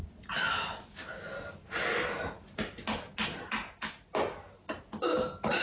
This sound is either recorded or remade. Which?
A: recorded